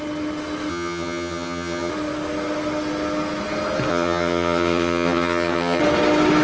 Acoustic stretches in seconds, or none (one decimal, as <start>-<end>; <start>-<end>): 0.0-0.7; 1.9-3.9; 5.8-6.4

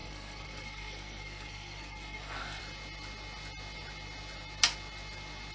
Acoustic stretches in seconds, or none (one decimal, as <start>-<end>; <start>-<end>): 2.6-5.5

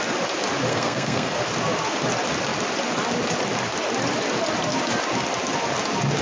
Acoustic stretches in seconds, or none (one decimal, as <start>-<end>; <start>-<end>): 0.0-0.7; 1.4-6.2

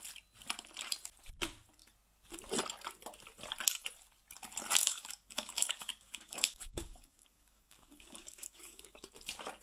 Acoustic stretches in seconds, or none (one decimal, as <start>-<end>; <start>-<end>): 0.0-4.8; 9.1-9.6